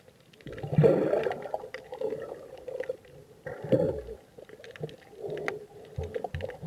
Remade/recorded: recorded